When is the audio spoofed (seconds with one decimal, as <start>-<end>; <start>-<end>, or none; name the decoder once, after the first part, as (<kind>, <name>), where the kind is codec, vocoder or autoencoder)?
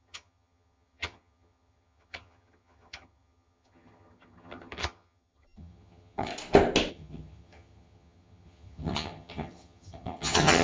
0.0-6.3 (vocoder, HiFi-GAN); 6.9-10.6